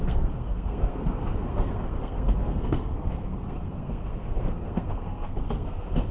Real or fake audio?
fake